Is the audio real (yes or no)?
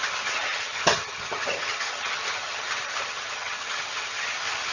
no